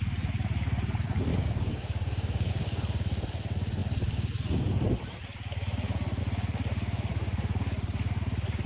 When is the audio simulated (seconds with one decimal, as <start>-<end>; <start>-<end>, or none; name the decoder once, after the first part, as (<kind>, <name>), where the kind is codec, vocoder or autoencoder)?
1.3-2.5 (codec, DAC); 7.1-8.2